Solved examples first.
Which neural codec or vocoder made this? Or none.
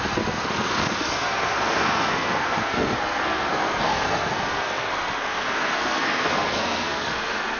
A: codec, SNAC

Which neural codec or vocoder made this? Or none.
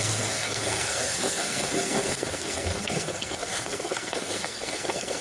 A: codec, SNAC